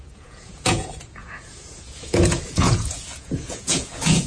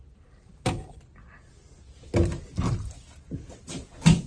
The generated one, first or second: first